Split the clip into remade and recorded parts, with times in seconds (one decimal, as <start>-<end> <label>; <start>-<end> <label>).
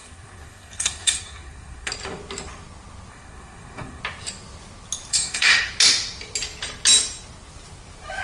0.0-1.9 remade; 1.9-3.1 recorded; 3.1-4.0 remade; 4.0-5.1 recorded; 5.1-5.7 remade; 5.7-8.2 recorded